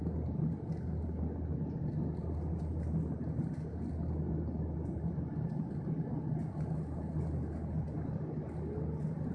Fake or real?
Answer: real